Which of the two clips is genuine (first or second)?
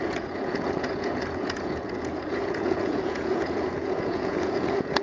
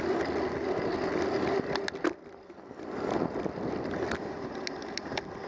second